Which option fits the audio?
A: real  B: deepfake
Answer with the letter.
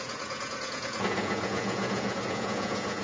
B